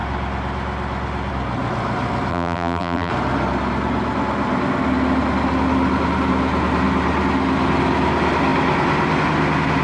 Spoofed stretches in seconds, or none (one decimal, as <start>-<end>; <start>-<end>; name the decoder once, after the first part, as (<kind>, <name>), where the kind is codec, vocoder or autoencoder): 2.3-3.1 (vocoder, BigVGAN v2)